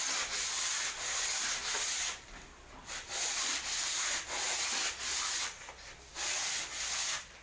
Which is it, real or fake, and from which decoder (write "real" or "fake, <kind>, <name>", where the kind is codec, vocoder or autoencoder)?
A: real